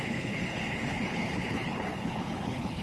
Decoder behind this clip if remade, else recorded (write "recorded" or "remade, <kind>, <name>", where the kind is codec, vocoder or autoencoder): remade, codec, HILCodec